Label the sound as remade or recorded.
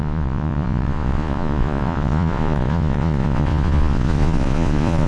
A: remade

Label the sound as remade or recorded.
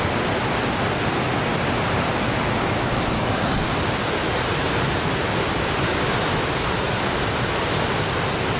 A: recorded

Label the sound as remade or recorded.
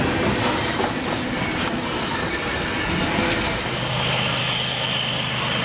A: recorded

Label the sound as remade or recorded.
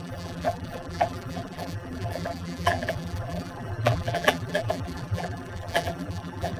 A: remade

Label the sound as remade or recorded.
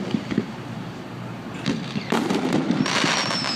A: recorded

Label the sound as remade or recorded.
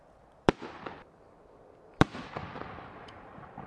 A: remade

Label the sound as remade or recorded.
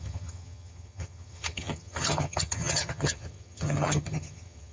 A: remade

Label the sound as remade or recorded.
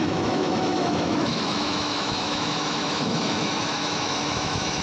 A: remade